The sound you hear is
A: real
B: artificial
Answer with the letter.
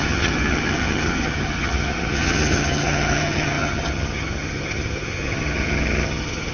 B